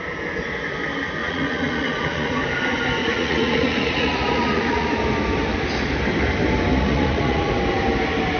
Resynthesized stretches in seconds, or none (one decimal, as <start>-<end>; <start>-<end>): 1.2-2.4; 3.0-4.9; 6.7-7.5